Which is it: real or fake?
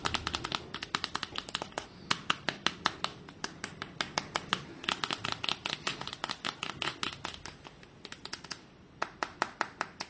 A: real